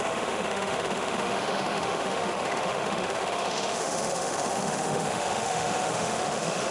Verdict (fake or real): fake